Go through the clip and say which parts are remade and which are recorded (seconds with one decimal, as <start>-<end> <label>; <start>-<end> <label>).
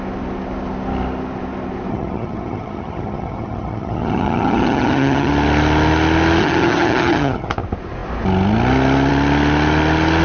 0.0-1.9 recorded; 1.9-5.3 remade; 5.3-6.4 recorded; 6.4-7.5 remade; 7.5-10.2 recorded